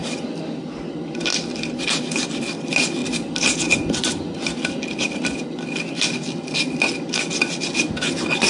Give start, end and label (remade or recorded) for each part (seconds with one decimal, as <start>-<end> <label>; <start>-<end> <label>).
0.0-0.7 remade; 0.7-1.3 recorded; 1.3-2.0 remade; 2.0-3.0 recorded; 3.0-3.6 remade; 3.6-8.5 recorded